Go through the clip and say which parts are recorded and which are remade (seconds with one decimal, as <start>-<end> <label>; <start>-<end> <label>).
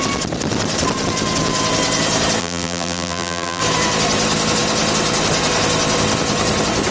0.0-2.4 recorded; 2.4-3.6 remade; 3.6-6.9 recorded